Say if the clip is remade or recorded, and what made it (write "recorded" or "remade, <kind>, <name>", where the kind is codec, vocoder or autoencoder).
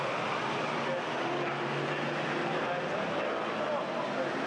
recorded